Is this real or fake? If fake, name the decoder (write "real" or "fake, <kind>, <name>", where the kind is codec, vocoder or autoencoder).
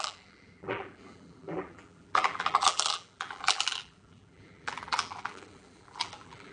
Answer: fake, vocoder, BigVGAN v2